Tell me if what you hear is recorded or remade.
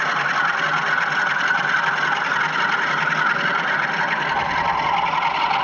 recorded